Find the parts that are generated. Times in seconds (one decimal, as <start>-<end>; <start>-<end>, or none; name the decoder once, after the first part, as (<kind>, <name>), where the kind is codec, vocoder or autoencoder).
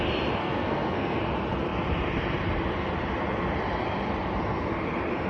0.4-1.2 (codec, SNAC)